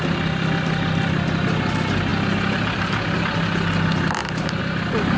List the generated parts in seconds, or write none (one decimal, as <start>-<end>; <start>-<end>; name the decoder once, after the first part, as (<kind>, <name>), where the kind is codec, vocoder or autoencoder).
none

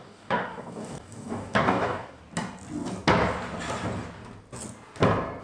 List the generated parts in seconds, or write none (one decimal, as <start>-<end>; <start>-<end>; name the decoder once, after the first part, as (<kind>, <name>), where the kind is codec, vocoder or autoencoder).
0.0-2.2 (codec, DAC)

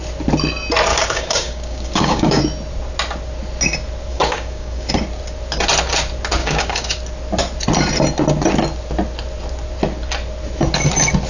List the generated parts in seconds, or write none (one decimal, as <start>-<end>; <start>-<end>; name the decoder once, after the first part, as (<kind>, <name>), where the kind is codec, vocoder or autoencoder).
0.9-2.4 (codec, DAC); 4.1-4.9; 6.4-7.0

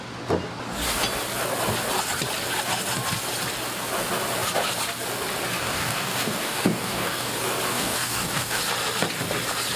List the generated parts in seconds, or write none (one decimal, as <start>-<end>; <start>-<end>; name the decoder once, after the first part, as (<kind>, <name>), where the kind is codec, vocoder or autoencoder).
5.6-7.3 (codec, DAC); 7.7-8.6

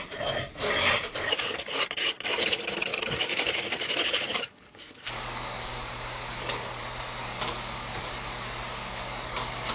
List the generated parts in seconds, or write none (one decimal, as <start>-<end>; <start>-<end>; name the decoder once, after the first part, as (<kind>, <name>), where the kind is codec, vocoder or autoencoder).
1.1-1.9 (codec, DAC); 2.9-6.8; 7.2-9.7

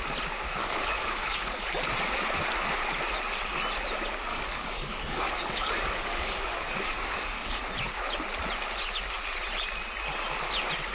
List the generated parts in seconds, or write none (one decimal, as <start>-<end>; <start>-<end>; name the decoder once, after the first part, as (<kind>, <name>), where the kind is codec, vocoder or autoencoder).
0.6-1.5 (codec, DAC); 4.3-7.6